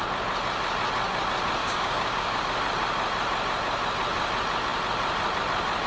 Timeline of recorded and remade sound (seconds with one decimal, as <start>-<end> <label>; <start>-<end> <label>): 0.0-1.6 recorded; 1.6-2.4 remade; 2.4-5.9 recorded